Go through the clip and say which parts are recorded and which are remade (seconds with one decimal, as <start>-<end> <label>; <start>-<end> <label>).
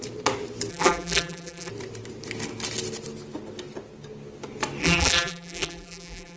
0.0-0.7 recorded; 0.7-1.7 remade; 1.7-4.8 recorded; 4.8-6.4 remade